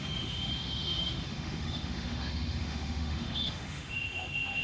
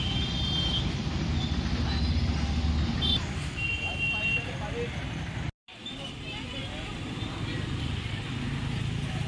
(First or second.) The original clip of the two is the second